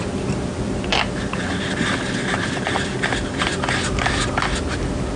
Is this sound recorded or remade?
recorded